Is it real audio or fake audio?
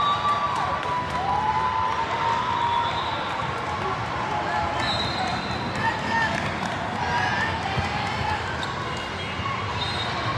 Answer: real